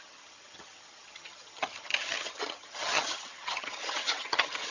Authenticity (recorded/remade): remade